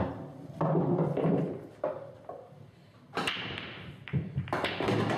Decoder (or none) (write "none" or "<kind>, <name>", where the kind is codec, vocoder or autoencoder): vocoder, BigVGAN v2